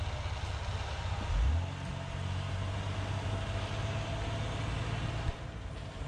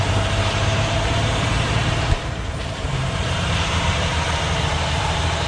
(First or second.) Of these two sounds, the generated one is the second